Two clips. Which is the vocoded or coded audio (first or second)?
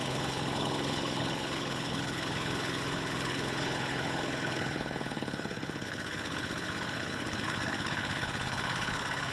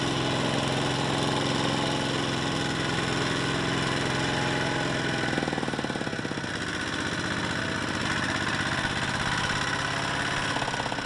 first